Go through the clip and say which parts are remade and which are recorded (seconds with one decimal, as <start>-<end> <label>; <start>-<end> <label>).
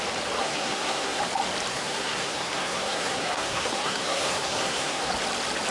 0.0-0.4 recorded; 0.4-1.2 remade; 1.2-1.7 recorded; 1.7-5.1 remade; 5.1-5.7 recorded